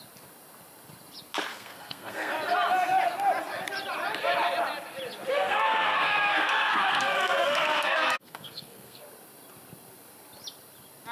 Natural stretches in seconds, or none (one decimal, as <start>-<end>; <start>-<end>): 0.0-1.5; 2.3-5.3; 9.0-11.1